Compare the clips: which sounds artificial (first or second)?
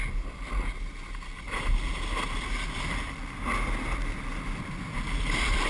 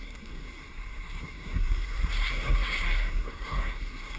second